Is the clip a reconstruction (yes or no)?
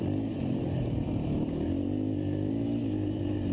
no